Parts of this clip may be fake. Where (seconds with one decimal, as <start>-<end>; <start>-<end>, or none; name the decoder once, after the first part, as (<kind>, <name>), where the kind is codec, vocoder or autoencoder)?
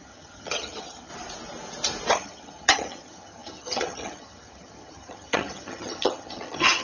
0.0-1.1 (vocoder, HiFi-GAN); 2.1-6.8